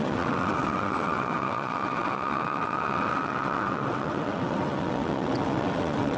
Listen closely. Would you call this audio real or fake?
fake